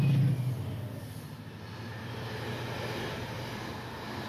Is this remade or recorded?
recorded